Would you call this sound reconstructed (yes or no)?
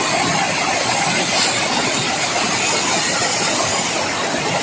no